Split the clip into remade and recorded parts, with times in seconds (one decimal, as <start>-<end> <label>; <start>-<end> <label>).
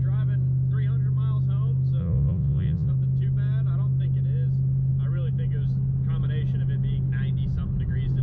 0.0-2.0 recorded; 2.0-2.9 remade; 2.9-8.2 recorded